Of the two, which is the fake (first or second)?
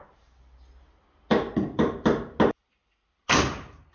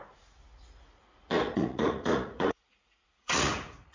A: second